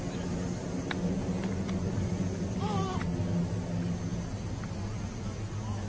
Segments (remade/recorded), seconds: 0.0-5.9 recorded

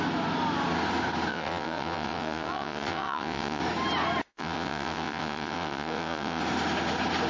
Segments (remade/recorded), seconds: 0.0-1.3 recorded; 1.3-3.6 remade; 3.6-4.3 recorded; 4.3-6.4 remade; 6.4-7.3 recorded

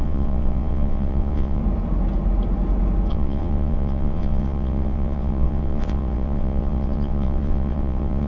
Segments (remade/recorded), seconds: 0.0-1.6 remade; 1.6-3.1 recorded; 3.1-8.3 remade

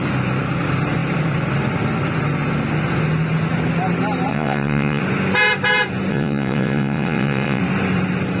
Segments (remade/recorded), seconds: 0.0-4.3 recorded; 4.3-5.0 remade; 5.0-6.1 recorded; 6.1-7.6 remade; 7.6-8.4 recorded